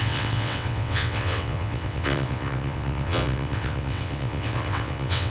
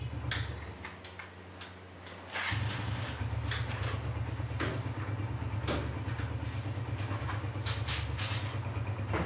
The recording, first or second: second